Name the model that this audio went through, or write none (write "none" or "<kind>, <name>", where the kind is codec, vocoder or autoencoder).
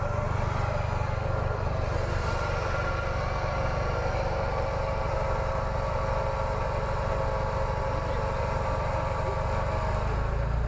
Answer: none